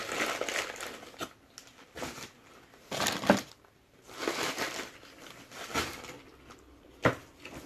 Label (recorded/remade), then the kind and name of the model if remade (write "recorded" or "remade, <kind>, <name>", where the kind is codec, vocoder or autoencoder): recorded